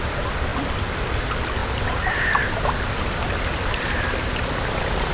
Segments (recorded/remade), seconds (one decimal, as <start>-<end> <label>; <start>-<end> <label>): 0.0-5.1 recorded